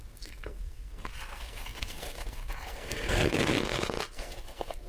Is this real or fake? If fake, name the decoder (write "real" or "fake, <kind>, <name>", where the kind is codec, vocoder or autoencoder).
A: fake, codec, SNAC